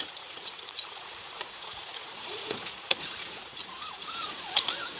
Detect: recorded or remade remade